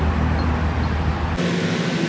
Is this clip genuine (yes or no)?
yes